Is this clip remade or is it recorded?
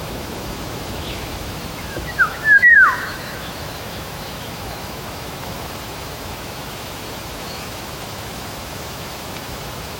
remade